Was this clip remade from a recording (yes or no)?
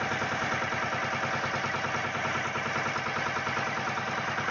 no